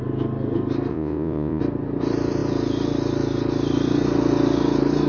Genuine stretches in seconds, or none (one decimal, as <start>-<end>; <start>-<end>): 0.0-0.9; 1.6-5.1